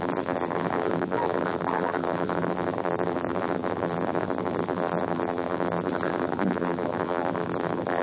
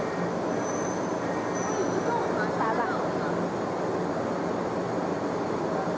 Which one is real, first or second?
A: second